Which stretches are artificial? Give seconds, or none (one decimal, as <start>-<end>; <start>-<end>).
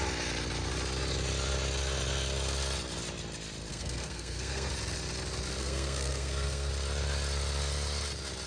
3.7-4.7; 5.6-6.7